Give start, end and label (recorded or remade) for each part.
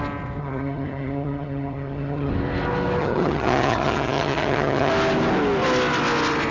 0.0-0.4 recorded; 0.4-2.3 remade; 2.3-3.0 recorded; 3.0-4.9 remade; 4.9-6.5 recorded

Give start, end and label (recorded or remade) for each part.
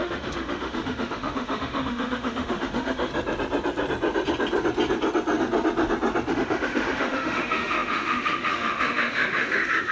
0.0-3.1 remade; 3.1-6.3 recorded; 6.3-9.9 remade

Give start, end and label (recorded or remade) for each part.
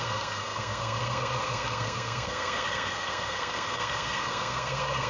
0.0-5.1 remade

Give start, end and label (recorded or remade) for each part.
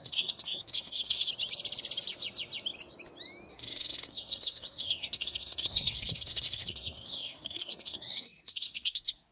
0.0-1.3 remade; 1.3-3.5 recorded; 3.5-9.3 remade